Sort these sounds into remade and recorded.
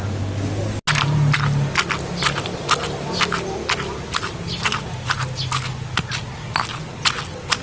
recorded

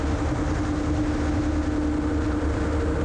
recorded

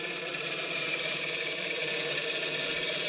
remade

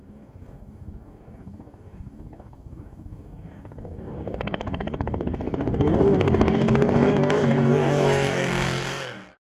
remade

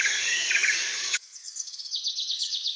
remade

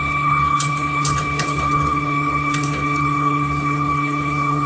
remade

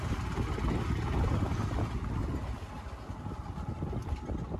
recorded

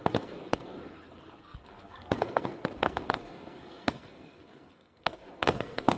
remade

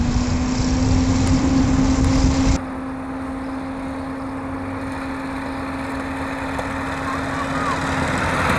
recorded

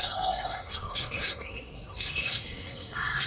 remade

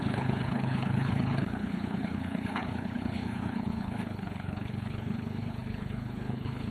remade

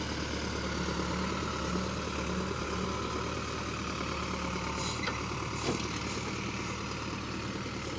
recorded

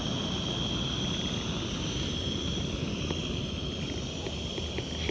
recorded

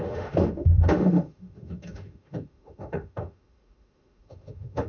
remade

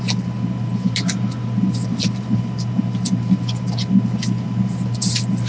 recorded